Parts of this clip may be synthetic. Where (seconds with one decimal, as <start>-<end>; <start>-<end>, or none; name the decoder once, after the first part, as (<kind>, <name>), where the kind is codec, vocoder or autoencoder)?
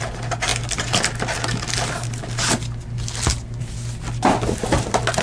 none